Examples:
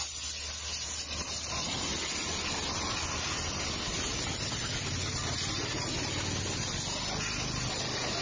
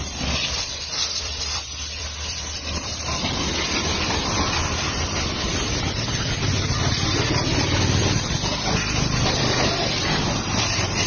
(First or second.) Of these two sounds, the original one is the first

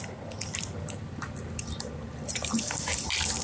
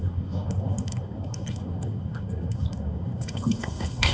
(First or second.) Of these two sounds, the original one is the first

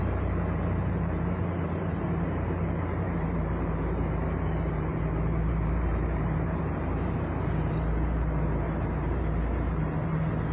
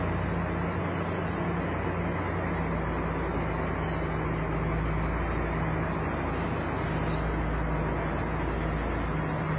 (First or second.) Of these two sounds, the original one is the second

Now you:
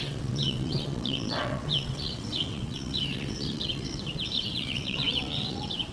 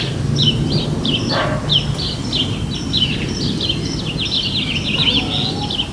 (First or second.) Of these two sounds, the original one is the second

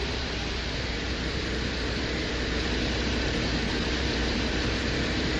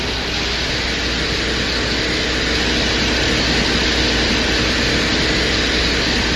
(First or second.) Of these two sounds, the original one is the second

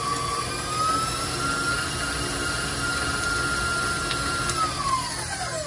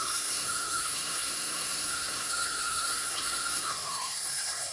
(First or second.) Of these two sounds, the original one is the first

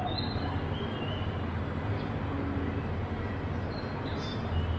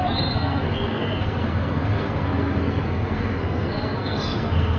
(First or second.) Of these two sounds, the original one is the first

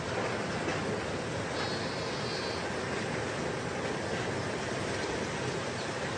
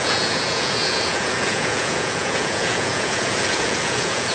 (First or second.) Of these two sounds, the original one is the first